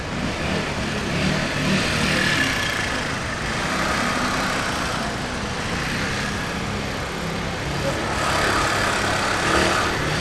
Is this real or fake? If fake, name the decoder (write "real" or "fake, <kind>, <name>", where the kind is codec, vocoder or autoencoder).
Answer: real